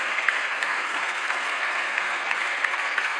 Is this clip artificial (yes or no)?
yes